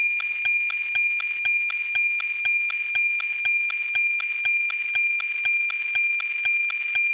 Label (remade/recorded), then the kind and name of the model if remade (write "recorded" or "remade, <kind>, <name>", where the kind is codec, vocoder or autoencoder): recorded